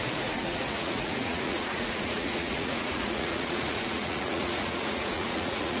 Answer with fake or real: fake